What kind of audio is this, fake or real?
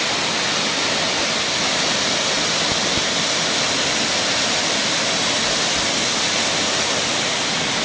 real